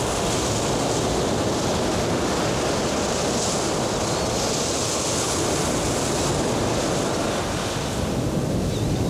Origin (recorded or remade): recorded